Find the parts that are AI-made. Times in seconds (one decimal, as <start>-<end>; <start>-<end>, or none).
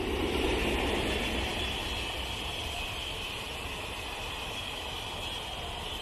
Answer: none